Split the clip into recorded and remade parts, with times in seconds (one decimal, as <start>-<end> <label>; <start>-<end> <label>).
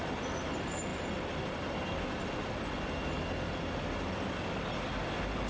0.0-5.5 recorded